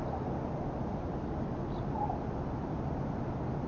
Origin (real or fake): real